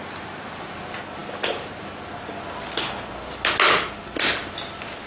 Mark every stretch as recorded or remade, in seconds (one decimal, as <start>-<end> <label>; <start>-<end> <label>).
0.0-5.1 recorded